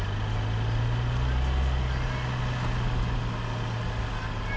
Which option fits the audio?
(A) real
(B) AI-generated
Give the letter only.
A